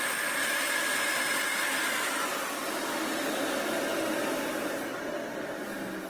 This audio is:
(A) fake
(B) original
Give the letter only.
B